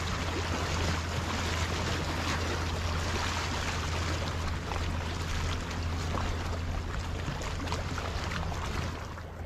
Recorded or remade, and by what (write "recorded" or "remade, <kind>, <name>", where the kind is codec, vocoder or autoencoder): recorded